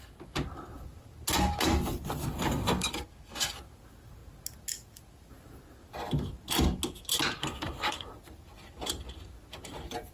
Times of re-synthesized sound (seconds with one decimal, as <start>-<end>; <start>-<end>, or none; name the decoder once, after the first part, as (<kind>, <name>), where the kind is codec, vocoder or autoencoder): 2.3-2.9 (codec, SNAC); 7.4-8.1